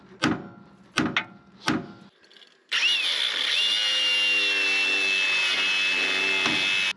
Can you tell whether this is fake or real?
real